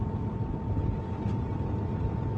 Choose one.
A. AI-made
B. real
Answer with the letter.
B